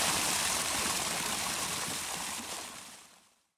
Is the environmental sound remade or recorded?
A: recorded